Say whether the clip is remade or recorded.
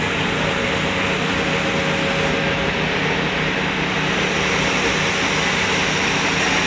recorded